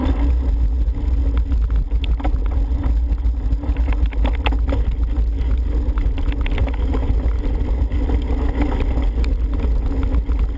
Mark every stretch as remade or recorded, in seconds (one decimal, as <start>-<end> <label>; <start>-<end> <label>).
0.0-10.6 recorded